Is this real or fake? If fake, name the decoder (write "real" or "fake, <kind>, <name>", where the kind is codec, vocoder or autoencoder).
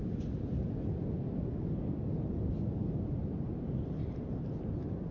real